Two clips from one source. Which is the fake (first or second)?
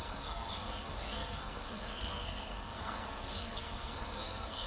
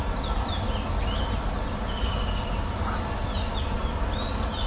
first